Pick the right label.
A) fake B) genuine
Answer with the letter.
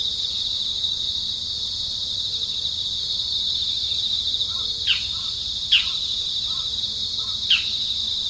B